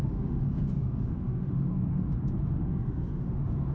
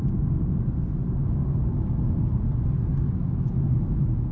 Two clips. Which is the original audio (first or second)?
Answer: second